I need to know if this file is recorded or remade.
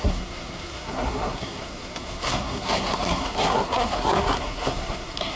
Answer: remade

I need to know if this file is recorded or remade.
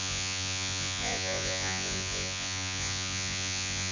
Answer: remade